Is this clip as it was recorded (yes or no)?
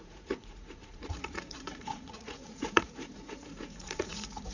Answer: no